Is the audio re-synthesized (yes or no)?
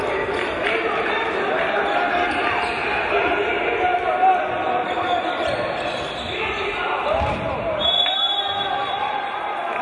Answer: no